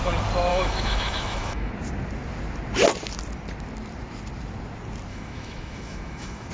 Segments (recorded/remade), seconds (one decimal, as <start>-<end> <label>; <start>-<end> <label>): 0.0-0.5 recorded; 0.5-1.7 remade; 1.7-5.1 recorded; 5.1-6.5 remade

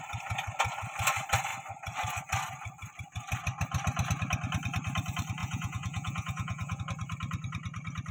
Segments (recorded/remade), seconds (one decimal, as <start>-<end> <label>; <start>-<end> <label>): 0.0-5.4 recorded; 5.4-6.8 remade; 6.8-8.1 recorded

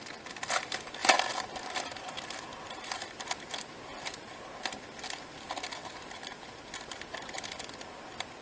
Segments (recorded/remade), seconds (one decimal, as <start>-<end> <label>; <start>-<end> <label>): 0.0-8.4 recorded